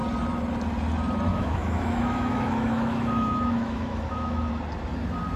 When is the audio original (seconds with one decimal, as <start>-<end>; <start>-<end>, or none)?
0.0-1.3; 4.5-5.4